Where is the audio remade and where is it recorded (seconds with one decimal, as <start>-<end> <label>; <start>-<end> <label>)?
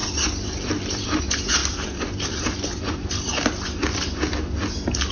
0.0-1.2 remade; 1.2-1.6 recorded; 1.6-4.0 remade; 4.0-5.1 recorded